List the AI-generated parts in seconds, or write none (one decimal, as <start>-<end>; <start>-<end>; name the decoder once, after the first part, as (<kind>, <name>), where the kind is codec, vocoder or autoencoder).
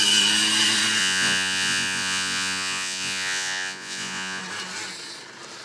1.0-4.4 (vocoder, Vocos)